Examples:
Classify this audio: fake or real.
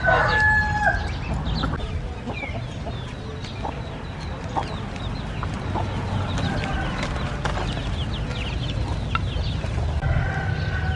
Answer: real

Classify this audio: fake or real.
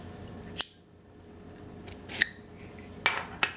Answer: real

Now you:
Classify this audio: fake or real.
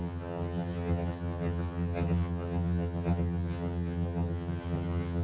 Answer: fake